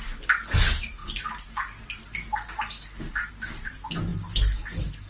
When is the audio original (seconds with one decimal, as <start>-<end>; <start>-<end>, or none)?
0.0-5.1